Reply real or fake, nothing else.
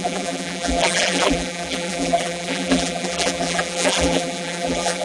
fake